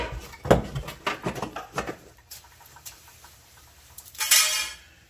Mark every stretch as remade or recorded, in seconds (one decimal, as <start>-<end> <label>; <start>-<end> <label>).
0.0-1.2 recorded; 1.2-4.3 remade; 4.3-5.1 recorded